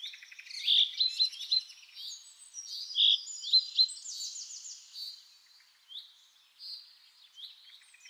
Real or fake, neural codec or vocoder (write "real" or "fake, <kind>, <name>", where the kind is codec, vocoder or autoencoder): real